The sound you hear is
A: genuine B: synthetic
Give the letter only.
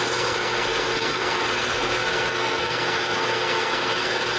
B